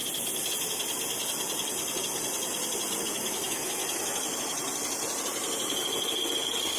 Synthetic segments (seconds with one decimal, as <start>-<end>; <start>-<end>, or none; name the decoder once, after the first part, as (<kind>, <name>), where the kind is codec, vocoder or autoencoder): 3.0-3.8 (autoencoder, DAC-VAE)